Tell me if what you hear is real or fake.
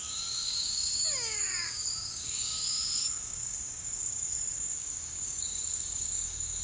fake